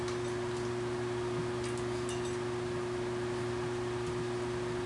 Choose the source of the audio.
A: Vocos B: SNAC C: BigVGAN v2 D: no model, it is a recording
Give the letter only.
D